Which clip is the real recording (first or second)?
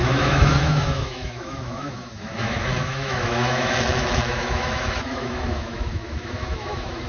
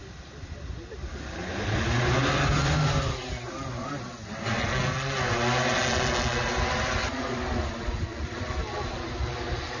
second